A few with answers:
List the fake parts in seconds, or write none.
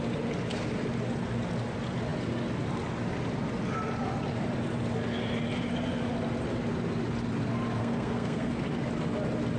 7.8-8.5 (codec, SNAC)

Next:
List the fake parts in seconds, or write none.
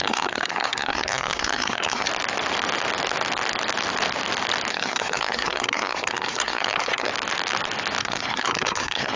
0.0-2.1 (codec, SNAC); 4.7-7.1; 8.0-9.2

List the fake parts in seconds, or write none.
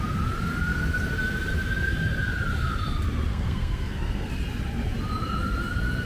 3.3-4.3 (codec, SNAC)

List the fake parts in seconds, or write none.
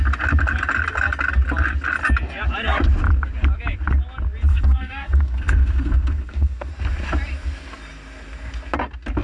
4.5-6.7 (codec, SNAC)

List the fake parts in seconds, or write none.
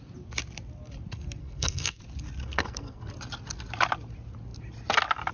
1.4-2.0 (codec, SNAC); 2.4-3.1